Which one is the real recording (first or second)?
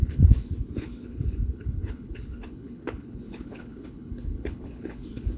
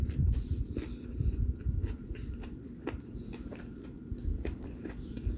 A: second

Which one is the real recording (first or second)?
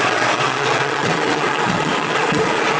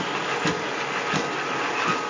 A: second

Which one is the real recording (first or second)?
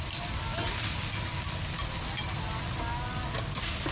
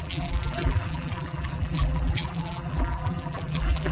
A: first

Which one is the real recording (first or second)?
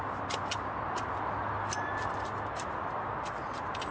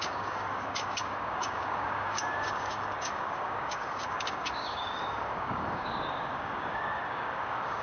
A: first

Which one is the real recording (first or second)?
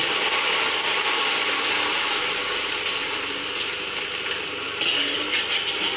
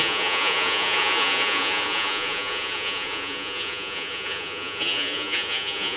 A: first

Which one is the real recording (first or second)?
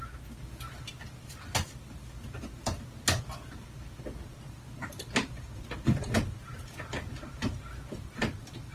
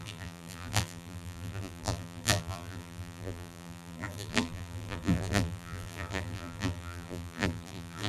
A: first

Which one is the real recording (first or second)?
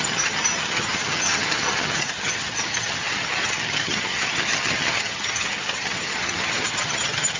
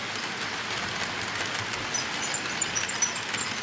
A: second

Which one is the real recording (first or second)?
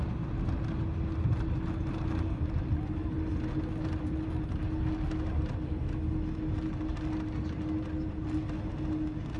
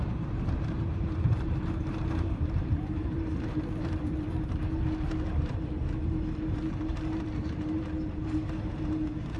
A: first